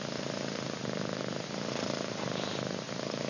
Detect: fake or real real